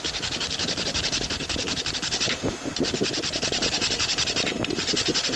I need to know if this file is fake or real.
real